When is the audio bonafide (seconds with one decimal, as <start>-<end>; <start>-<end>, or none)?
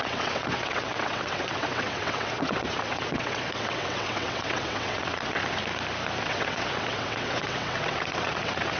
5.6-6.2